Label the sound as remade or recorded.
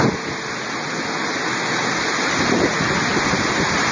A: recorded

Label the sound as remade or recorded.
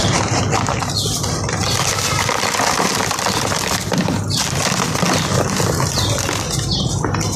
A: recorded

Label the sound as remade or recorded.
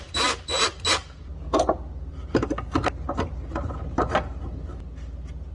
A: recorded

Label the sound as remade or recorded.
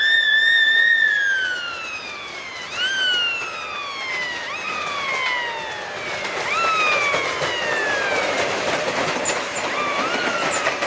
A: recorded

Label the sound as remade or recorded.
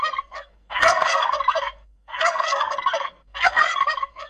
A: remade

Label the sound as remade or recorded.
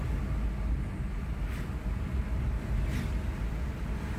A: recorded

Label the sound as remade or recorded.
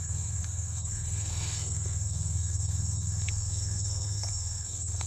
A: remade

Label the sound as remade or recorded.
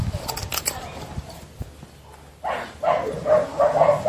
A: recorded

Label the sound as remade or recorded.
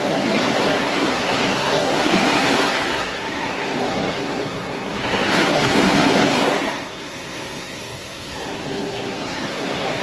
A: remade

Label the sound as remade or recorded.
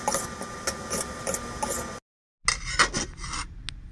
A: recorded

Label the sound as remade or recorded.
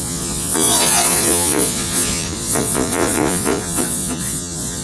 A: remade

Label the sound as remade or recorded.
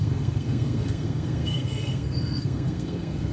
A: remade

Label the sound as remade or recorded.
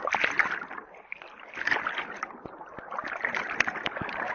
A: recorded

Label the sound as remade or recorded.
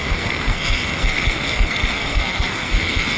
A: remade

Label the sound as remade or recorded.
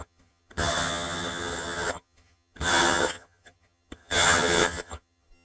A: remade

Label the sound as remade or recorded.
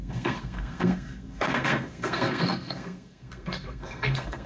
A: remade